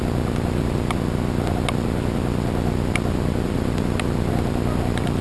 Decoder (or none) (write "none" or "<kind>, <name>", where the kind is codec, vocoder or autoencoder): none